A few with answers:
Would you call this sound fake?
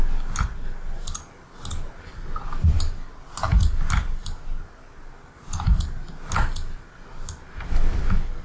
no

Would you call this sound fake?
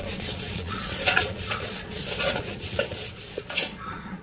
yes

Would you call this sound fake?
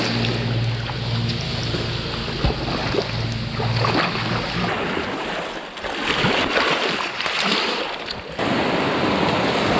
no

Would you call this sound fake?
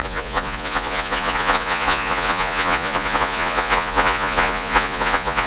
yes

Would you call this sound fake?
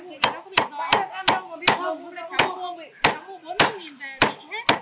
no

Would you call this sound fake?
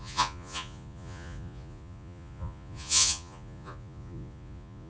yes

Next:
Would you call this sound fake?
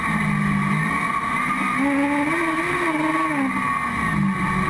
no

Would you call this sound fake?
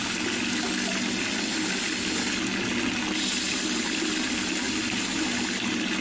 no